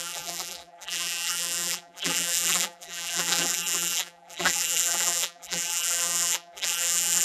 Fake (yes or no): yes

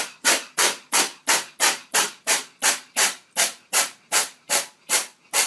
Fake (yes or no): yes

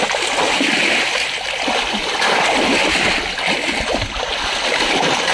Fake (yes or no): no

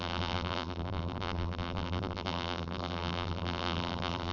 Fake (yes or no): yes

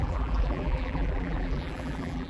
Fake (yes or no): yes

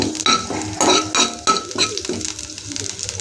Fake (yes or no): no